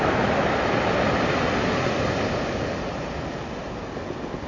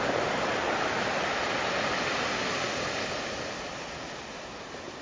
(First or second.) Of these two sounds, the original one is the first